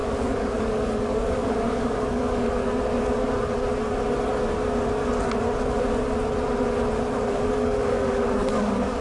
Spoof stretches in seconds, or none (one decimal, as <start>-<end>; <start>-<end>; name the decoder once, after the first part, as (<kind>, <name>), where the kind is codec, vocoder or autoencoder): 0.0-2.6 (codec, DAC); 7.3-9.0